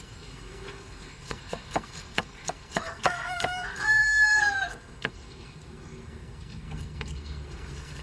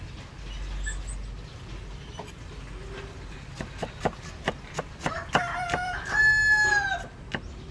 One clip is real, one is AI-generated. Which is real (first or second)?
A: second